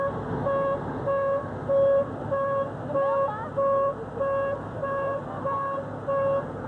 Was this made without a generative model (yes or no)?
yes